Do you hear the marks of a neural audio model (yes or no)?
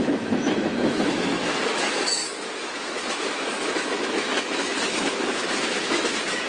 yes